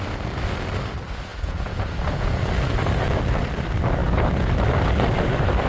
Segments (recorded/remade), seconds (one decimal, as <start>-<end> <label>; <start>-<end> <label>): 0.0-1.3 recorded; 1.3-2.4 remade; 2.4-5.7 recorded